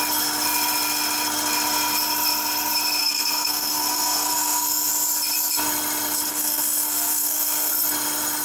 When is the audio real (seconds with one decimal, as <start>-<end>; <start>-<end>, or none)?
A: 0.0-3.0; 4.9-6.3; 7.7-8.4

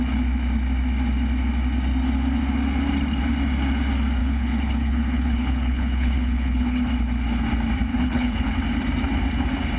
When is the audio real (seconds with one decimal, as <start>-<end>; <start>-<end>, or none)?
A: 0.0-4.2; 6.8-7.9; 8.6-9.8

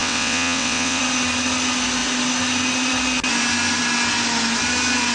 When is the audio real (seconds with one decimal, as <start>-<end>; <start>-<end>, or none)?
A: 1.0-5.1

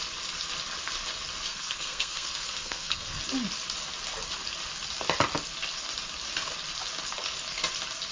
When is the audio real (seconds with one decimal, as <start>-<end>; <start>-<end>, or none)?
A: 0.0-1.5; 3.2-8.1

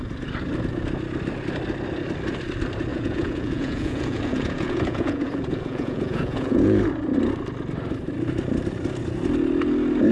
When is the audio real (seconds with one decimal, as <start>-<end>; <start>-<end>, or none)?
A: 0.0-2.9; 6.8-10.1

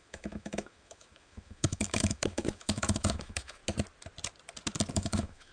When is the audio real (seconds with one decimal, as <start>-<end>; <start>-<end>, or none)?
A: 3.6-4.9

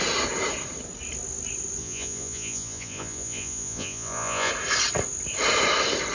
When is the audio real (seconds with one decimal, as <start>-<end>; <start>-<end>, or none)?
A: 0.0-1.8; 4.5-6.1

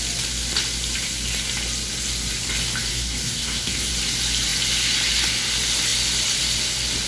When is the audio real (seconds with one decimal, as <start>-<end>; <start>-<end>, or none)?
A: 0.0-2.9; 3.9-7.1